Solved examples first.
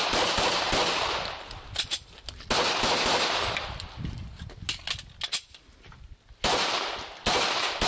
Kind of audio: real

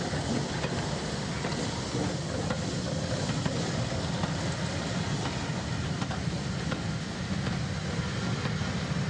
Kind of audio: real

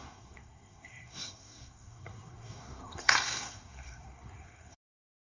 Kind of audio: fake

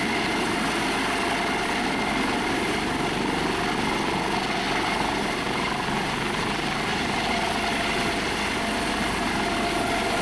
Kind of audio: real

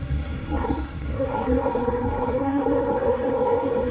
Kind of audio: fake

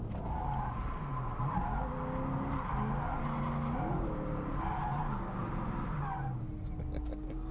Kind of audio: real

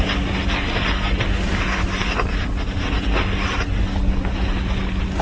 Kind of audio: real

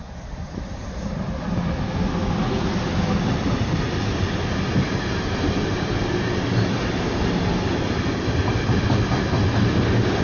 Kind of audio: real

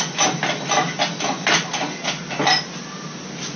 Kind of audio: real